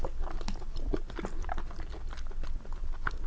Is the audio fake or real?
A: real